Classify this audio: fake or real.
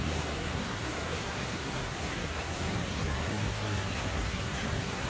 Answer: fake